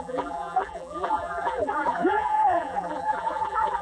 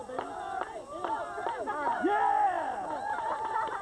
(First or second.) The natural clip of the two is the second